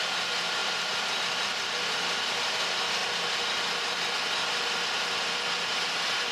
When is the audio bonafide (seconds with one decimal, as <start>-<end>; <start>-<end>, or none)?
0.0-6.3